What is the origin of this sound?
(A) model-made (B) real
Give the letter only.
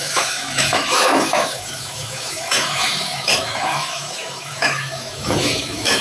A